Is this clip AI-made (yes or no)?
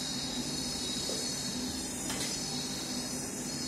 no